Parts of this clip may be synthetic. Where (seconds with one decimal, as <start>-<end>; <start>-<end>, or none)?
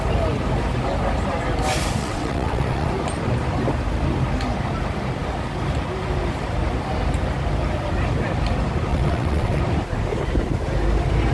2.0-2.9; 8.9-9.6